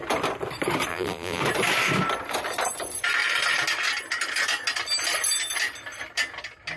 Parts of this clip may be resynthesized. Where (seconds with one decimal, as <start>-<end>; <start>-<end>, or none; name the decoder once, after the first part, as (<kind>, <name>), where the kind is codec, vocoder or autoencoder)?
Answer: 0.9-1.4 (vocoder, BigVGAN v2)